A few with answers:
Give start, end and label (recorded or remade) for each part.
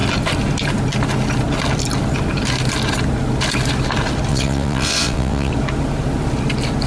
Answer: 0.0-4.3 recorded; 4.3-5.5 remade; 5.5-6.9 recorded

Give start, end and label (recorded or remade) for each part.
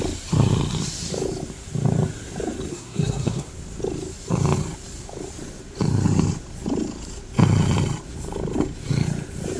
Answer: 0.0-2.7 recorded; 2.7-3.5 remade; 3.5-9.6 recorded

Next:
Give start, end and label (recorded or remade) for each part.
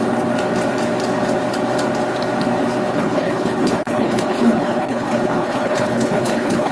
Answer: 0.0-2.9 recorded; 2.9-6.7 remade